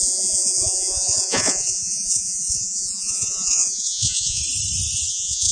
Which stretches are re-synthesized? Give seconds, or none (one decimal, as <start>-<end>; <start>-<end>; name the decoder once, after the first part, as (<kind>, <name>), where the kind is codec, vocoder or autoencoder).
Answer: 0.0-4.4 (vocoder, Vocos); 5.1-5.5